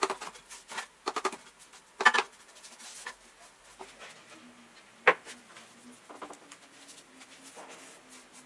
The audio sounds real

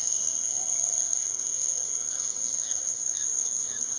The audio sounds fake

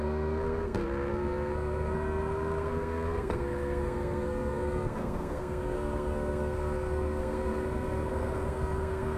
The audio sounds fake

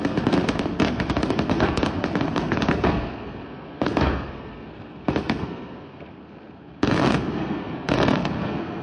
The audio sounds fake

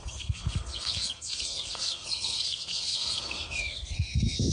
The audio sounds fake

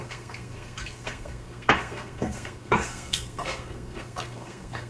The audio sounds fake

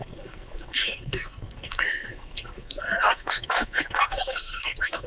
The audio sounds fake